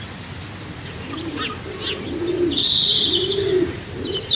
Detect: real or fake real